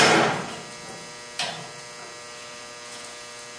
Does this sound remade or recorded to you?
recorded